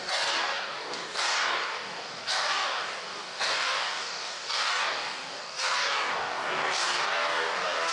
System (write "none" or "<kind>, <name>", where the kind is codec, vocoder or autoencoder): codec, DAC